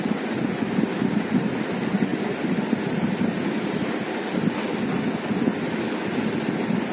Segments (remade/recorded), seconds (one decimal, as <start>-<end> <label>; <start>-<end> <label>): 0.0-6.9 recorded